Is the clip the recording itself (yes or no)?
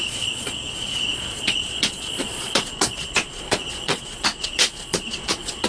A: no